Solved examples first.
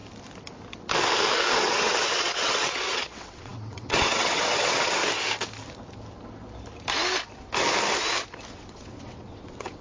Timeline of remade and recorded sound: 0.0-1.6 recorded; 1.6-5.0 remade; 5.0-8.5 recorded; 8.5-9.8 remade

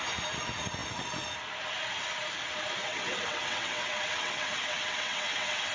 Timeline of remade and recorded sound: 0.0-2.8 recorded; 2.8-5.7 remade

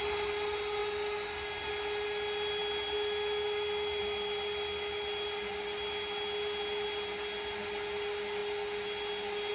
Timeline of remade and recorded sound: 0.0-9.5 recorded